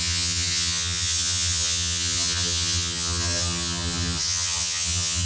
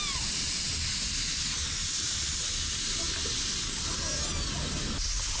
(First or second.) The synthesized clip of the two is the first